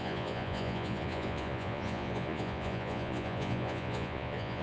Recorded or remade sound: remade